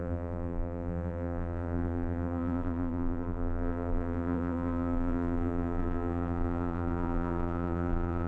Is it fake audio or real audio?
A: fake